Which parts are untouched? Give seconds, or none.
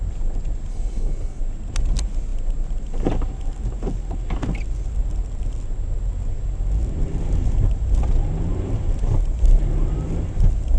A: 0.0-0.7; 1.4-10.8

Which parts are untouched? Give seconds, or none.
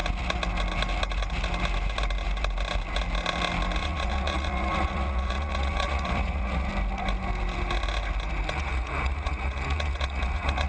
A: 0.0-3.8; 6.7-8.5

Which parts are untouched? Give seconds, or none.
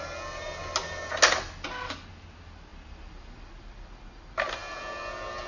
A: 0.0-5.5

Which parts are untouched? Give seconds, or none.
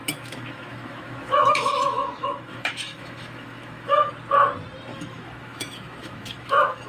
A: 4.1-4.9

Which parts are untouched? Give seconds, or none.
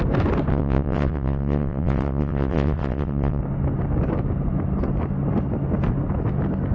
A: 0.0-0.5; 3.4-6.7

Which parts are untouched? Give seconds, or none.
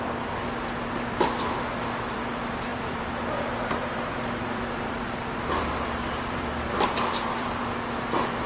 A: 0.0-2.7; 7.6-8.5